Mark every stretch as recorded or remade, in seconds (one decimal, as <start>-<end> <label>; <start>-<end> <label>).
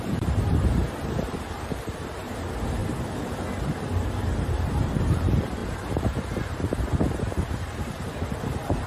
0.0-2.8 remade; 2.8-3.8 recorded; 3.8-8.9 remade